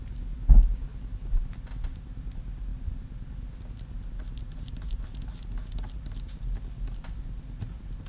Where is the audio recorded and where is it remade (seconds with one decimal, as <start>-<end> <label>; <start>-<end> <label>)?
0.0-8.1 recorded